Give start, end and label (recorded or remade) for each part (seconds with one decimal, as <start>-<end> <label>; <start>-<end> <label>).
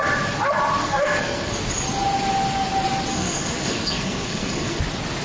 0.0-0.8 recorded; 0.8-1.5 remade; 1.5-3.1 recorded; 3.1-4.8 remade; 4.8-5.2 recorded